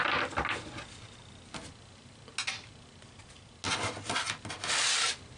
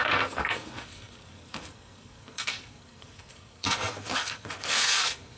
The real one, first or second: first